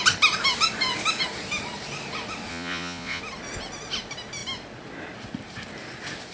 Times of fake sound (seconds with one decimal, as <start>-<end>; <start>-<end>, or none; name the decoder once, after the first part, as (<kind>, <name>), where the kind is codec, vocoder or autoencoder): 2.5-3.2 (vocoder, Vocos)